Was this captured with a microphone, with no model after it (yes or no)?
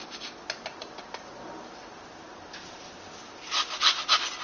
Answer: yes